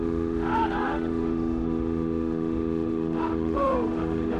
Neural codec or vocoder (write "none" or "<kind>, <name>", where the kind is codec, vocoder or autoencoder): autoencoder, DAC-VAE